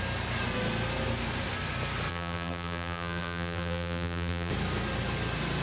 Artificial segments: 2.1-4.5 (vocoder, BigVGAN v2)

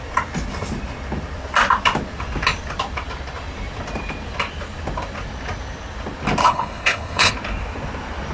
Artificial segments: 6.4-7.3 (codec, HILCodec)

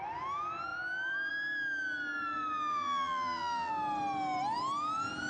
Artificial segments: 2.7-3.7 (vocoder, BigVGAN v2)

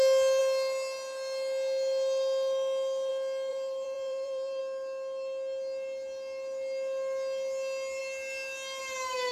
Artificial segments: 3.5-4.6 (vocoder, BigVGAN v2)

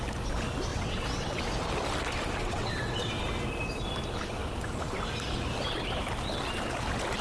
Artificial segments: 0.7-1.4 (vocoder, WaveNeXt); 2.4-3.1